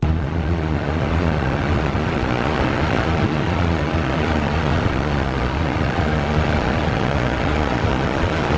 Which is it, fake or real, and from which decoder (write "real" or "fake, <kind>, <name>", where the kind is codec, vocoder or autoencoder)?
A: fake, vocoder, Vocos